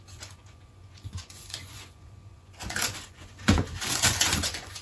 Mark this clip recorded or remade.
remade